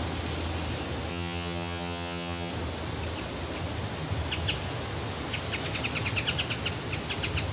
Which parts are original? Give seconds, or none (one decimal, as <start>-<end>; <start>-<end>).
0.0-1.1; 2.5-7.5